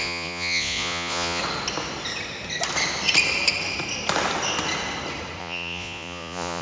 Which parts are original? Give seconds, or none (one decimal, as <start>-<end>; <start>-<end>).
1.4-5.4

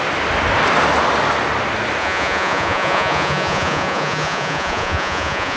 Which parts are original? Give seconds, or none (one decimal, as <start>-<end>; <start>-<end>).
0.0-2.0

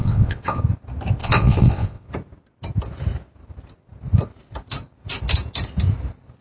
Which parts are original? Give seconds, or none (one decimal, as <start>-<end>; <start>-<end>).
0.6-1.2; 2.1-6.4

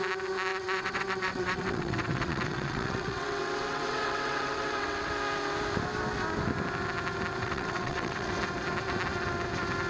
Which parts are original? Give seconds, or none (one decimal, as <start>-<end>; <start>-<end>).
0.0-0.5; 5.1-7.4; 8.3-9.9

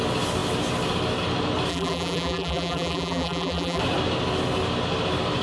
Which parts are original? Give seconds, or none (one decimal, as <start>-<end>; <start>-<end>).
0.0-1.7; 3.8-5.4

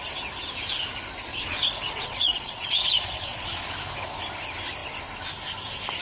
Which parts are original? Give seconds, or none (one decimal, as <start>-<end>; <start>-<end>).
0.0-1.3; 3.6-6.0

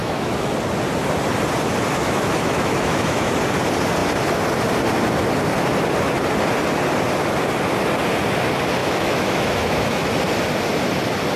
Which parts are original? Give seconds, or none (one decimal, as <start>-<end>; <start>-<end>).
0.5-2.0; 3.3-8.8; 10.1-11.4